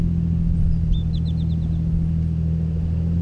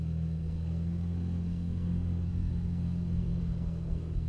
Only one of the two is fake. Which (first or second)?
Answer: second